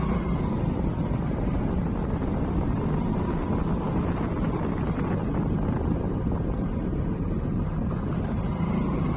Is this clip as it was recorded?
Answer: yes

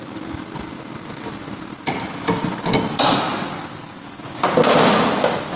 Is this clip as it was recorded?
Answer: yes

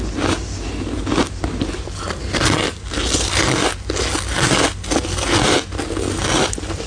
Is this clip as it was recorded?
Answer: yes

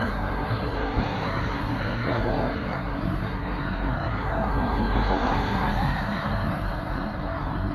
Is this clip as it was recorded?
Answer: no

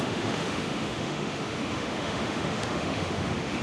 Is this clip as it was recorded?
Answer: no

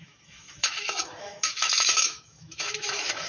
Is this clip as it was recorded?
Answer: no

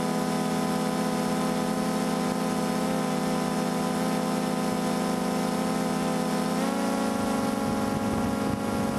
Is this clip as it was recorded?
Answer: yes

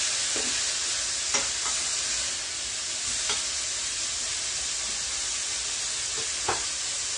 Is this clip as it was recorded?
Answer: yes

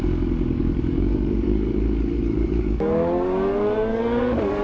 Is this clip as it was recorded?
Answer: no